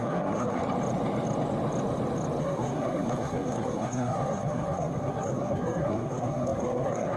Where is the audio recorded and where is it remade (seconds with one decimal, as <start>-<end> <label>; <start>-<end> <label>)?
0.0-0.6 remade; 0.6-2.4 recorded; 2.4-7.2 remade